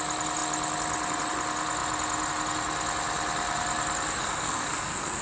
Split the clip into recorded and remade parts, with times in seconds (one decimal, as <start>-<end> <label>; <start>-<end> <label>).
0.0-4.2 recorded; 4.2-5.2 remade